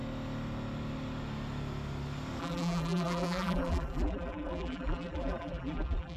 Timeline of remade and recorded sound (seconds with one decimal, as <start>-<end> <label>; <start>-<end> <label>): 0.0-2.4 recorded; 2.4-6.2 remade